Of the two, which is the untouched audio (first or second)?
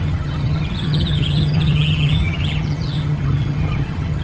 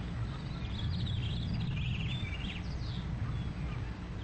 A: second